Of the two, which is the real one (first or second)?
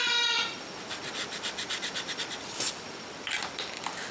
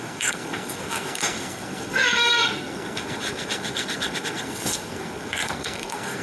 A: first